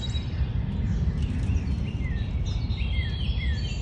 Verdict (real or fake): real